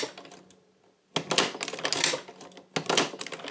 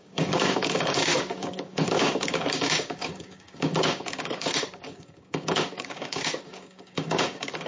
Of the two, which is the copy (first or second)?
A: second